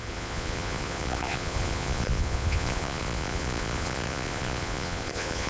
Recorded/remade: remade